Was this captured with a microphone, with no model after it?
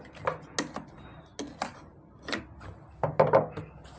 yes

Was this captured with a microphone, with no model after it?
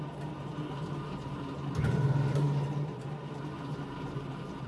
no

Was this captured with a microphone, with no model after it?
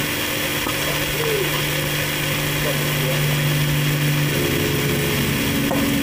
yes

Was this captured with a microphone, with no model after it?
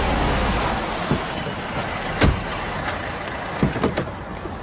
yes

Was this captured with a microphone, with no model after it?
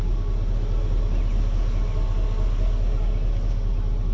yes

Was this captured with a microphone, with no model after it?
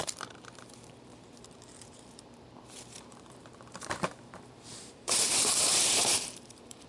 no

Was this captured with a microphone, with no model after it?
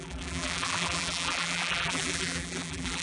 no